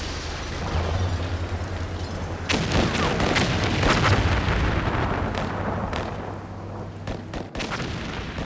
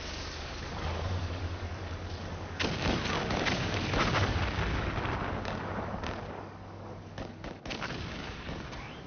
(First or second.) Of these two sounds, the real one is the first